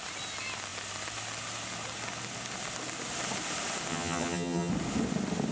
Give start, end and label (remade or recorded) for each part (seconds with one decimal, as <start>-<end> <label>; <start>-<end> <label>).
0.0-3.9 recorded; 3.9-4.7 remade; 4.7-5.5 recorded